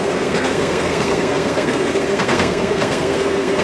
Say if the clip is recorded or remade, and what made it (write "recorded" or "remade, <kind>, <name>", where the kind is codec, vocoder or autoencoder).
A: remade, codec, SNAC